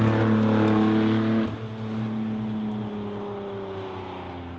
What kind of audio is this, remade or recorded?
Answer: recorded